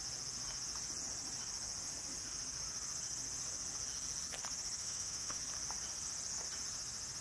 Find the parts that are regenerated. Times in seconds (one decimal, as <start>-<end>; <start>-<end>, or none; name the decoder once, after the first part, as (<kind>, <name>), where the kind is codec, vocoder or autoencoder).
4.8-5.4 (autoencoder, DAC-VAE)